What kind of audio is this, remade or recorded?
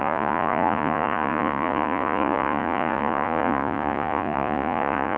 remade